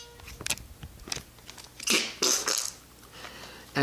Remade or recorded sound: recorded